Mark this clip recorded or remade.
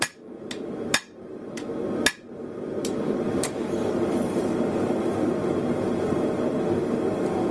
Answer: remade